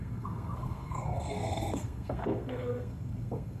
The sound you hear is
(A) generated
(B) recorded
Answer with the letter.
A